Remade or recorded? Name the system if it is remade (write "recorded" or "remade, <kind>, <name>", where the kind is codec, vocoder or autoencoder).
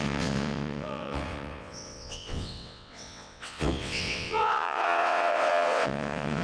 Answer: remade, vocoder, WaveNeXt